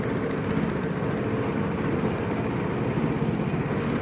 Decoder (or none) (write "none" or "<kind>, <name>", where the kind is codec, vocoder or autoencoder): none